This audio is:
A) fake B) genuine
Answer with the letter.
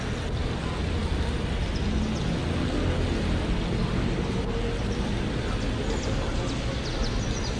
B